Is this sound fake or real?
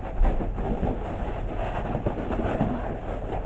real